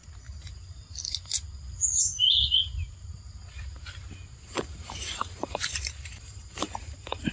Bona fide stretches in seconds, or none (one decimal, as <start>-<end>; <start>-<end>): 0.0-4.4